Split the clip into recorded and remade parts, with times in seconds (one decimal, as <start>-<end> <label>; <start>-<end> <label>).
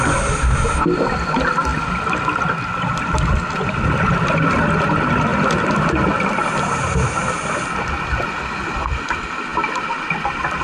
0.0-10.6 recorded